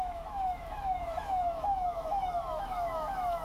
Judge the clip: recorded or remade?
remade